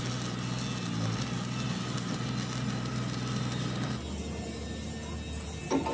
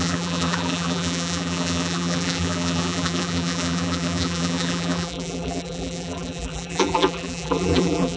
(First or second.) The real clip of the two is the first